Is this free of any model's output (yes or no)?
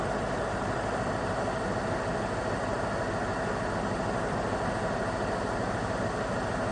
yes